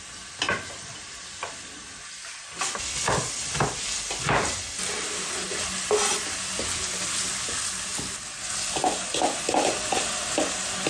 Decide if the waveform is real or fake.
real